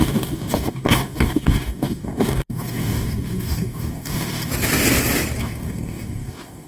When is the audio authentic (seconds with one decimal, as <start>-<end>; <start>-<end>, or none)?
4.5-5.4